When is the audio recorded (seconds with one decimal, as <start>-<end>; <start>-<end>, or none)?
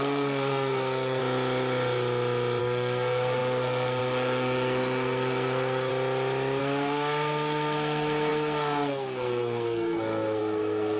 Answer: 1.2-2.6; 5.9-6.6